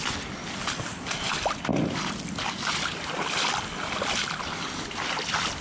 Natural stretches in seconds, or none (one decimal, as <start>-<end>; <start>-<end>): 0.0-5.6